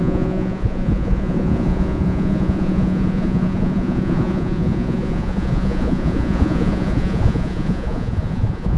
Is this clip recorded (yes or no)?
no